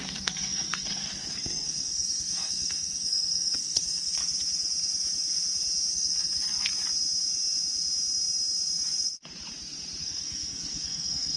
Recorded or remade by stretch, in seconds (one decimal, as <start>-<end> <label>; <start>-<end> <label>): 0.0-4.2 remade; 4.2-5.9 recorded; 5.9-6.7 remade; 6.7-10.0 recorded; 10.0-11.4 remade